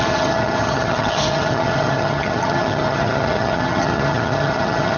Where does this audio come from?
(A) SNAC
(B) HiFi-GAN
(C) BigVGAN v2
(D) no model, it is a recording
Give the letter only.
B